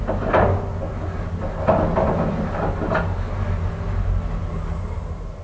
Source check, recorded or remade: recorded